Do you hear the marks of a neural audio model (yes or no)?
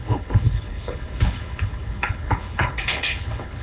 yes